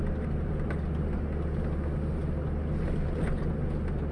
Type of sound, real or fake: real